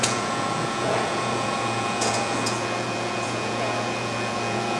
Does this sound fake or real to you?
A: fake